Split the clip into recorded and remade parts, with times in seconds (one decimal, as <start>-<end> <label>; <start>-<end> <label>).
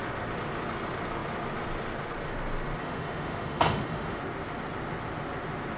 0.0-2.8 recorded; 2.8-4.2 remade; 4.2-5.8 recorded